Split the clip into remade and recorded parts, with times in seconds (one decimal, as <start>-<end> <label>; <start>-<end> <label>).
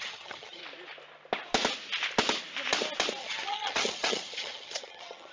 0.0-0.6 remade; 0.6-3.2 recorded; 3.2-5.3 remade